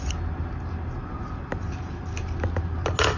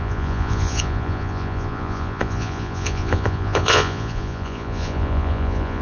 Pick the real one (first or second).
first